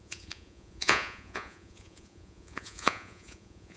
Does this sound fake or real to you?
fake